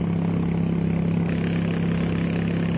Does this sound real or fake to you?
real